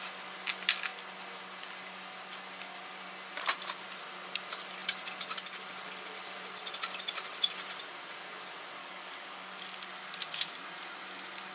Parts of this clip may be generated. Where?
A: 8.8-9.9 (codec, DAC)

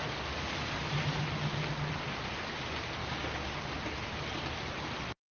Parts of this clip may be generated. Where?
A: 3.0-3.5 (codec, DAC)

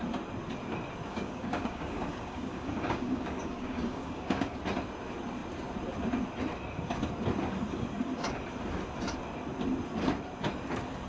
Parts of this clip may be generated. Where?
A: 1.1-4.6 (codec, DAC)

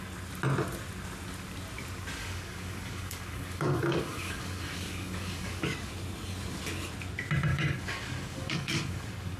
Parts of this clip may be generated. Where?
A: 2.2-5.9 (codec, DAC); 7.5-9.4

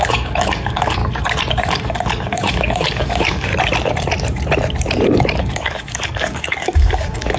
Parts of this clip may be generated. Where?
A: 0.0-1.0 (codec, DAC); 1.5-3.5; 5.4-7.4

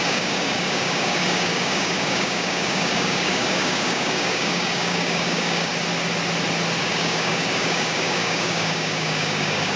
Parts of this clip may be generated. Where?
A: 0.0-5.7 (codec, DAC); 6.8-9.8

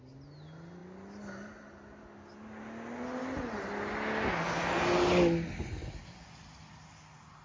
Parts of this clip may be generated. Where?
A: none